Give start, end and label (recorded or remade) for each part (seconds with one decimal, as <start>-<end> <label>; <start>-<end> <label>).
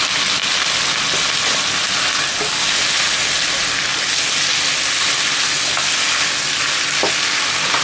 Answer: 0.0-7.8 recorded